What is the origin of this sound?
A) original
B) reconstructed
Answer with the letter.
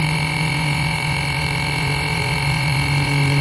B